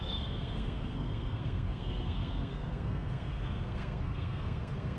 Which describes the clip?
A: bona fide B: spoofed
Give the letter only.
B